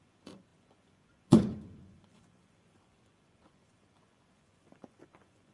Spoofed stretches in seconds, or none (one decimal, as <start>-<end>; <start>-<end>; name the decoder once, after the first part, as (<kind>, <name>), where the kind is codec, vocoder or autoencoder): 0.0-5.5 (vocoder, Vocos)

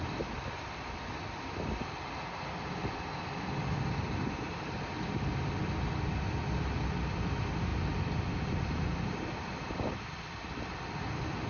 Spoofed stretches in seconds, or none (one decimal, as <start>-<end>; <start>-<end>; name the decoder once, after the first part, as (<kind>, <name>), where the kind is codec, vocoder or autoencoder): none

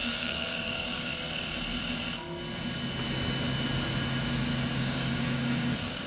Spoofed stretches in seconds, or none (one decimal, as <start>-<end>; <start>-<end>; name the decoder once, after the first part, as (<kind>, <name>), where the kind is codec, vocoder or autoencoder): 0.0-1.1 (codec, DAC); 4.8-6.1

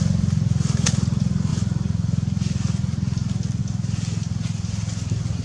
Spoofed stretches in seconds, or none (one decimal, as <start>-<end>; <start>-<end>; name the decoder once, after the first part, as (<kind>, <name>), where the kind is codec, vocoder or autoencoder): none

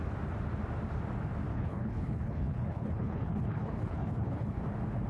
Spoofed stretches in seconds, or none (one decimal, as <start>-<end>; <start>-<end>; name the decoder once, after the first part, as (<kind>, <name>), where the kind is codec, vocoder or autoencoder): 1.5-4.6 (codec, HILCodec)